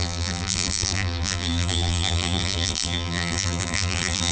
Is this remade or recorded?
remade